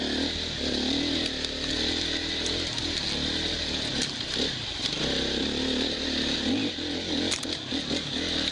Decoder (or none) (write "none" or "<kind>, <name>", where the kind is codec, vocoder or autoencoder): none